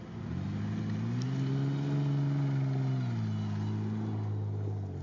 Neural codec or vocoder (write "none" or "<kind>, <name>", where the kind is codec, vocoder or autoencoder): none